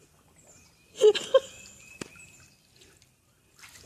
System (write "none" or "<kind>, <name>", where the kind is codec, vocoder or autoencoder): none